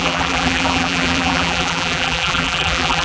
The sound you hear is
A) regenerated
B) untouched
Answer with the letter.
A